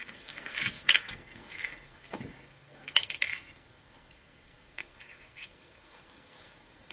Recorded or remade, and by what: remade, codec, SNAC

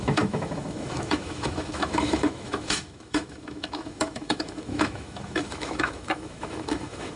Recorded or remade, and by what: remade, autoencoder, DAC-VAE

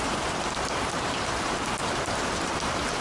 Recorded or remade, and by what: recorded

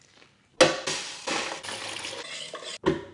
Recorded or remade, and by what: recorded